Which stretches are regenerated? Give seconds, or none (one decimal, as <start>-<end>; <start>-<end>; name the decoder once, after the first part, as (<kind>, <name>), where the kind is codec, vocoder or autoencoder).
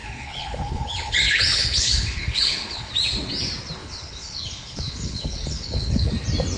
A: 0.0-2.9 (codec, HILCodec); 3.8-6.1